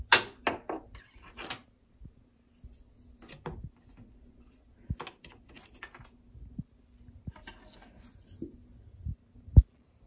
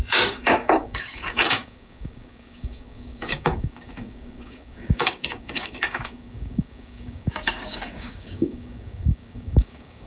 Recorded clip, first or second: first